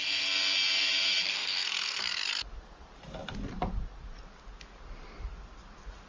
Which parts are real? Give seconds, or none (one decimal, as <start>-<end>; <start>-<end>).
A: 0.0-1.3; 2.0-6.1